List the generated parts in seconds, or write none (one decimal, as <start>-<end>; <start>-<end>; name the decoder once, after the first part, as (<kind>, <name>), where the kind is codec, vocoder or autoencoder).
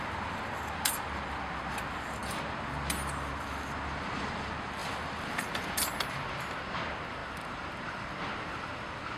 none